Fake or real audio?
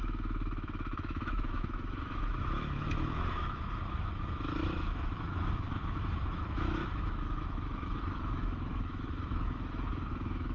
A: fake